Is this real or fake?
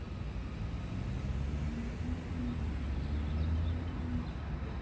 real